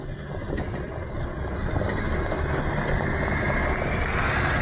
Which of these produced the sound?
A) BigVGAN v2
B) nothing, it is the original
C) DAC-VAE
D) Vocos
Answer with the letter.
B